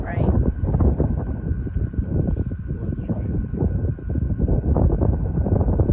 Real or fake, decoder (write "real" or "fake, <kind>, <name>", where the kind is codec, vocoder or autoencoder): fake, vocoder, BigVGAN v2